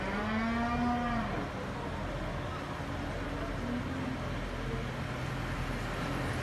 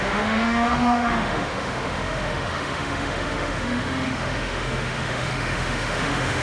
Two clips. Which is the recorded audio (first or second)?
first